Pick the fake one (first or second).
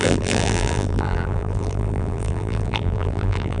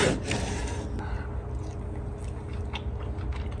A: first